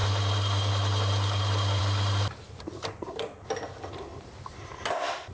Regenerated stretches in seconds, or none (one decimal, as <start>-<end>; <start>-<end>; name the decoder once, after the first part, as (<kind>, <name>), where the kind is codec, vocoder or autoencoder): none